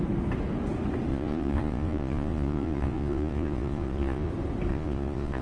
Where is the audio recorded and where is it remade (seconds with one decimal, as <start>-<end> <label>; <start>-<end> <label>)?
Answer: 0.0-1.1 recorded; 1.1-4.3 remade; 4.3-4.7 recorded; 4.7-5.4 remade